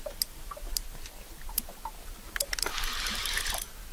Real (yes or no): no